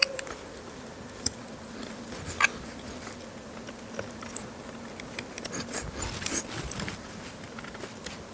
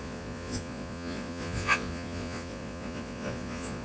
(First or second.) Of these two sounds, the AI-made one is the second